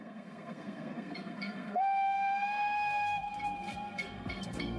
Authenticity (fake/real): fake